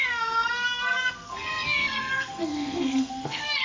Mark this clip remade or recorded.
remade